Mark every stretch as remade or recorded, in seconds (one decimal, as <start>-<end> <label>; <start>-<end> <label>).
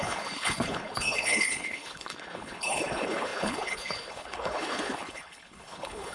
0.0-6.1 remade